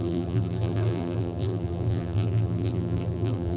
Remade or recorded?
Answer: remade